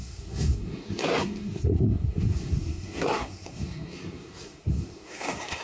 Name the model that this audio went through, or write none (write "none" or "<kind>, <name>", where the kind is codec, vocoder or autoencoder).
codec, SNAC